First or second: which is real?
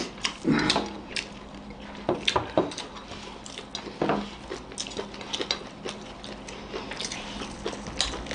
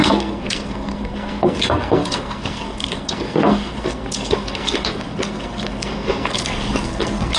first